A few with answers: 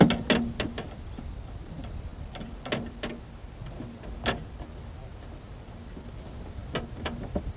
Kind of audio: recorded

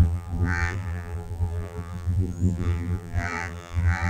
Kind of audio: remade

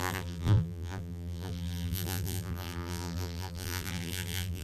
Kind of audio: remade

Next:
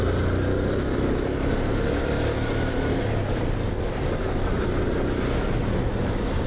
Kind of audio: recorded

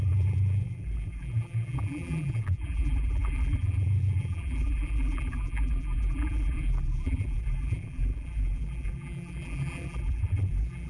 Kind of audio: remade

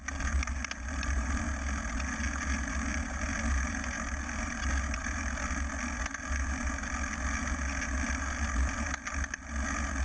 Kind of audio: recorded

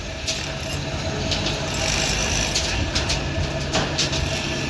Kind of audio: recorded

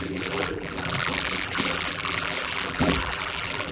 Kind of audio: remade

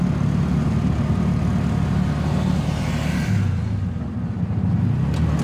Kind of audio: recorded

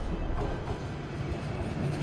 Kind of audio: recorded